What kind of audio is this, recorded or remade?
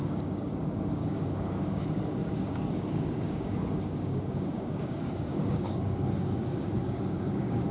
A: remade